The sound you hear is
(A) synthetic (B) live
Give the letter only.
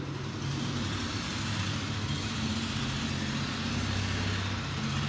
A